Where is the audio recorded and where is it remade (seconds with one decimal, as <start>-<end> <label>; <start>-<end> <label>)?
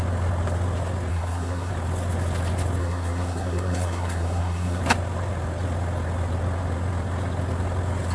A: 0.0-1.1 recorded; 1.1-1.7 remade; 1.7-2.8 recorded; 2.8-4.8 remade; 4.8-8.1 recorded